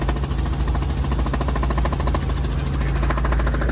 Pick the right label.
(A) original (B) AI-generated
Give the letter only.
A